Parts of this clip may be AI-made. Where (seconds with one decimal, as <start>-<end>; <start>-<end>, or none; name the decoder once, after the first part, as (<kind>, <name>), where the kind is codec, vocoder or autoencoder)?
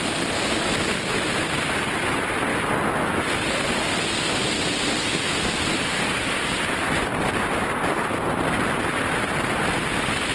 6.4-9.2 (vocoder, BigVGAN v2)